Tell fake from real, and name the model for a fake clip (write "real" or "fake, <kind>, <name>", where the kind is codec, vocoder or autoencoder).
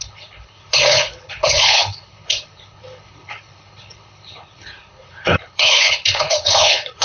fake, codec, HILCodec